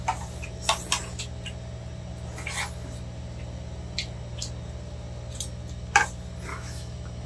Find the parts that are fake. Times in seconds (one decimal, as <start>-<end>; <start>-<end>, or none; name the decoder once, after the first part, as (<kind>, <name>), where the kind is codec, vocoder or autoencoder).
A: 6.5-7.3 (autoencoder, DAC-VAE)